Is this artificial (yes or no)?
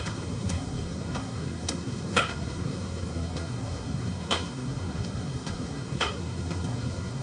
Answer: yes